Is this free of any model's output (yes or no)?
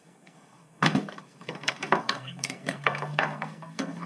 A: no